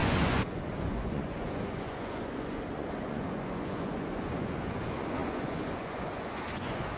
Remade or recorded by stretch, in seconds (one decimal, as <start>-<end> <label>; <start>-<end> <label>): 0.0-7.0 remade